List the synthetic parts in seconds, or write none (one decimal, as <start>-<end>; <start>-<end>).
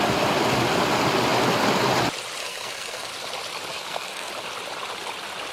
2.4-3.1; 3.7-4.3